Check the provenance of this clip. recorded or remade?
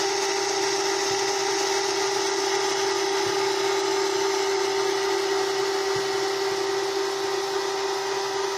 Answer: recorded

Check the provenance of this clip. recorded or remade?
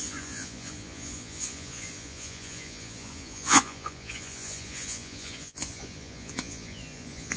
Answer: remade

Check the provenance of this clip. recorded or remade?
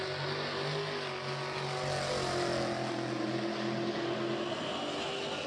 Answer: recorded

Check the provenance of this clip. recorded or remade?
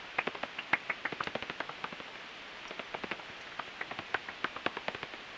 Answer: recorded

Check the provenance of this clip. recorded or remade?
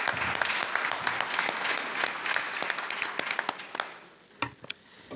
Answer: recorded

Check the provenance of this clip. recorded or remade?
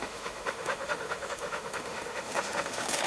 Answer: remade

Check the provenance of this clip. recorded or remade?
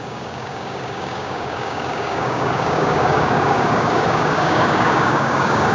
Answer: remade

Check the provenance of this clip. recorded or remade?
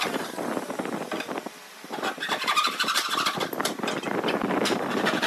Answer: recorded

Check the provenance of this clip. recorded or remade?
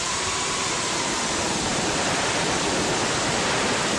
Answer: remade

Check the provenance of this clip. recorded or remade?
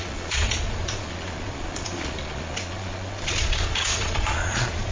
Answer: remade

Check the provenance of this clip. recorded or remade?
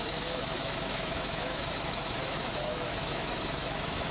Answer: remade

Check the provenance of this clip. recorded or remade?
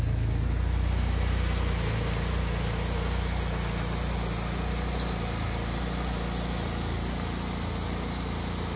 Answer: recorded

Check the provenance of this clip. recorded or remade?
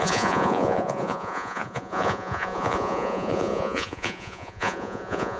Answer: remade